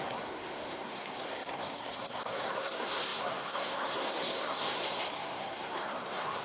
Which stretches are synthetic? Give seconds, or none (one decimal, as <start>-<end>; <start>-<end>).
0.0-6.4